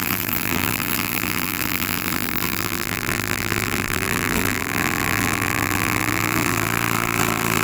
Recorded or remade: remade